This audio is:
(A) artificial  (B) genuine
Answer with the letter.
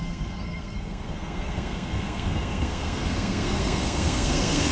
A